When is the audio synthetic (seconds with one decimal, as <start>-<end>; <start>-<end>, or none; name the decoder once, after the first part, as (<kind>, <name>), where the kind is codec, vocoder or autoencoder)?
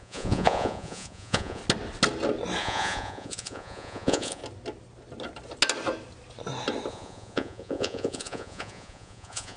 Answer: 0.0-1.6 (vocoder, Vocos); 2.6-4.4; 6.9-9.6